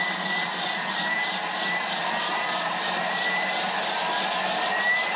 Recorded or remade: recorded